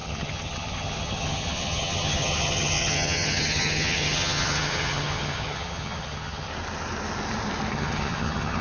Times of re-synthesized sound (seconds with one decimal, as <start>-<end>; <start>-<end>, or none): 0.0-6.5; 7.7-8.6